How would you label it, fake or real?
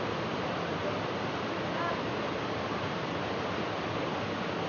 real